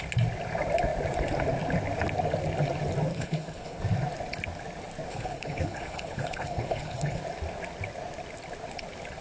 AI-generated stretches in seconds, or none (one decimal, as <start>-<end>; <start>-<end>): 3.1-3.8; 5.1-7.2